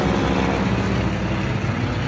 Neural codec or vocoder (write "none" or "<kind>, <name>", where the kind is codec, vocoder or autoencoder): none